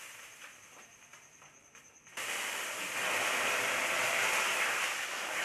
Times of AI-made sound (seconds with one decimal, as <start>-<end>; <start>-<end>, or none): 0.0-3.0; 4.5-5.4